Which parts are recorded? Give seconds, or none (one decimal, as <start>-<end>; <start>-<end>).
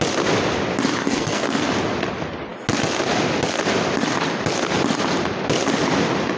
0.0-1.0; 1.7-6.4